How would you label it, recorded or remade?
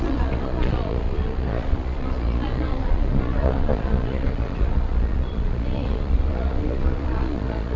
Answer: remade